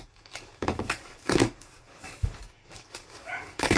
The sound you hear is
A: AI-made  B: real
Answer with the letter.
A